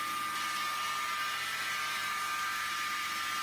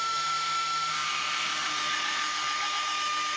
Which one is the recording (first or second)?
first